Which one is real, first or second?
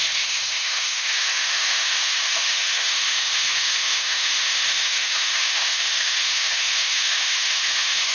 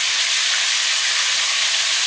second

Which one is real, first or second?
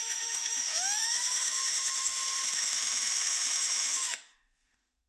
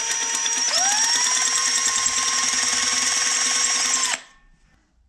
second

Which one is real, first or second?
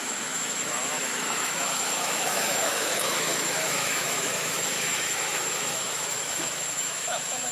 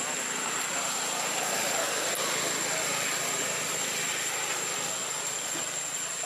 second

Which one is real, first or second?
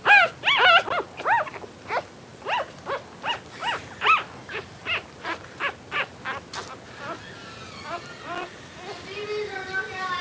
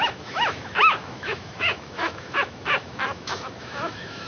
first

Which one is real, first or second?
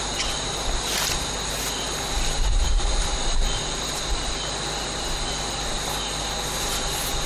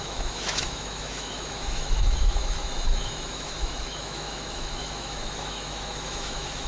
first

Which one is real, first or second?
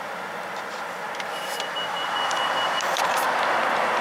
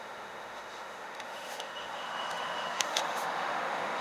first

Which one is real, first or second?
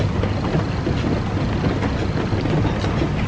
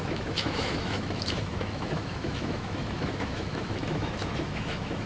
first